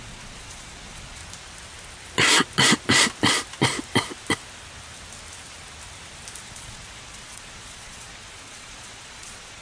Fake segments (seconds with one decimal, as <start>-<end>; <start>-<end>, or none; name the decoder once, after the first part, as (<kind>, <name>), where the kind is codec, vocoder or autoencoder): 0.0-1.2 (vocoder, Vocos); 6.4-9.6